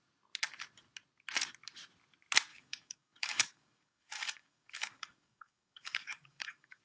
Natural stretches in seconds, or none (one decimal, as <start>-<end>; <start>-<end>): 0.0-2.5